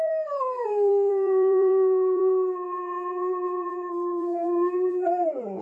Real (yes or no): no